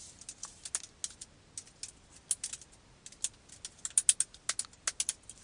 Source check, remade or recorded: recorded